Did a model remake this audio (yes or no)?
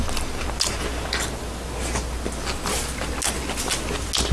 no